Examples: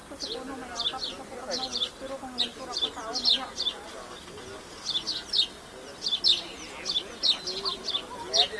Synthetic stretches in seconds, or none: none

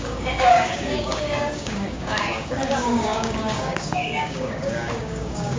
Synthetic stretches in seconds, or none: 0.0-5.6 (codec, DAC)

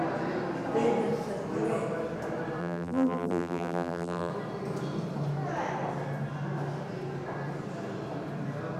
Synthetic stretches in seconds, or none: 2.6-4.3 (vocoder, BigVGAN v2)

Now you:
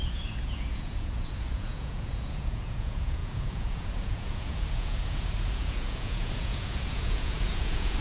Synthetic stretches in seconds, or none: 0.0-8.0 (vocoder, Vocos)

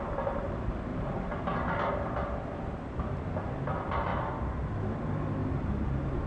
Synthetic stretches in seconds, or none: 0.9-1.9 (vocoder, BigVGAN v2); 5.4-6.3